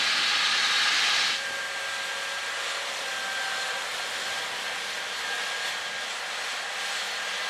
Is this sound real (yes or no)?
yes